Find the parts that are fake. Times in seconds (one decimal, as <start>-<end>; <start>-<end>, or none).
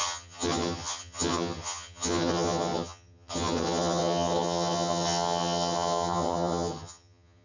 0.0-7.4